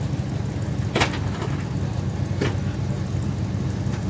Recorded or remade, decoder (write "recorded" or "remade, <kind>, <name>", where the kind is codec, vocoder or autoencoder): recorded